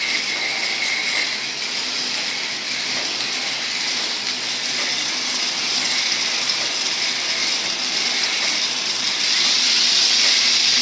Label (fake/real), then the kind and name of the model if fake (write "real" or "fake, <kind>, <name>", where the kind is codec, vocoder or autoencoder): real